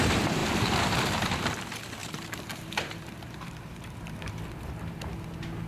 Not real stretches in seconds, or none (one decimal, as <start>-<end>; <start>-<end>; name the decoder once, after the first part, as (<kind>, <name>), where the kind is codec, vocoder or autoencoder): 0.4-1.3 (vocoder, BigVGAN v2); 2.0-4.0